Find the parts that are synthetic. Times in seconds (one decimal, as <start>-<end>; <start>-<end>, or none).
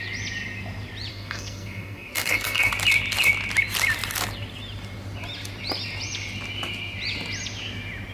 1.1-2.7